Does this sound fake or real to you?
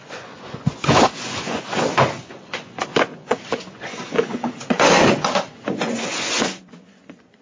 fake